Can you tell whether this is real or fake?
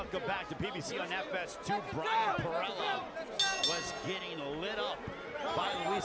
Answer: real